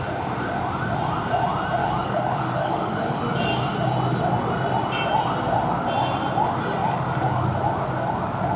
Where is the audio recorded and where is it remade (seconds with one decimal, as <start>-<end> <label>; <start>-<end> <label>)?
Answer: 0.0-1.8 recorded; 1.8-3.2 remade; 3.2-6.8 recorded; 6.8-7.5 remade; 7.5-8.6 recorded

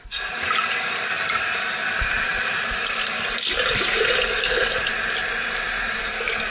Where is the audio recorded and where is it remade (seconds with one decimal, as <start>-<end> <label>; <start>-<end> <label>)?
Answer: 0.0-6.5 recorded

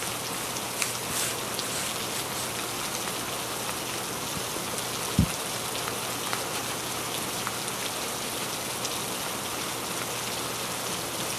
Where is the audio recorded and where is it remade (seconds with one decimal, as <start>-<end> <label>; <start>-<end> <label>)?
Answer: 0.0-11.4 recorded